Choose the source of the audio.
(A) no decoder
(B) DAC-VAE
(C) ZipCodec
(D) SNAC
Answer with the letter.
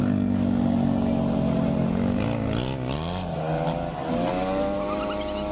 A